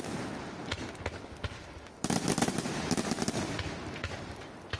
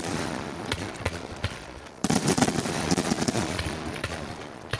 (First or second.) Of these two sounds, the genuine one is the first